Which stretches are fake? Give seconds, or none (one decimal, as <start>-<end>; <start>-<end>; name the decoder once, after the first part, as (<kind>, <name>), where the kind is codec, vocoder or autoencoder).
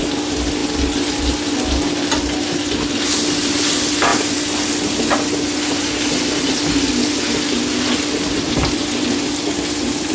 none